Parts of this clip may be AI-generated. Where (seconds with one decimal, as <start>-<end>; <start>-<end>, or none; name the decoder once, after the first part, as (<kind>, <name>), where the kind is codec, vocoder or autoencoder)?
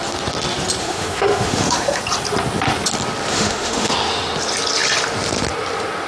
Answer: 0.8-2.0 (autoencoder, DAC-VAE); 3.3-3.9